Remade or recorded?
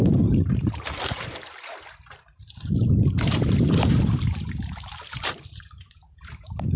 remade